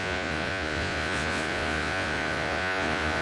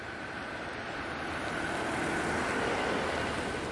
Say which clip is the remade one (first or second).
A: first